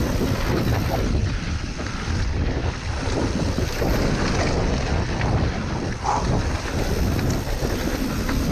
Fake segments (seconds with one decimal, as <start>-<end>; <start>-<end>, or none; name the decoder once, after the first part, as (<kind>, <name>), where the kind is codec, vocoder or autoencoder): 1.2-3.4 (vocoder, BigVGAN v2)